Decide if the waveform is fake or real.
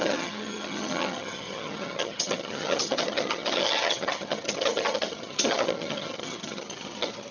fake